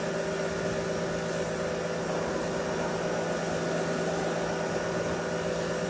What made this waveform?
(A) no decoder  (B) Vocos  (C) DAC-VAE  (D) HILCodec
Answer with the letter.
A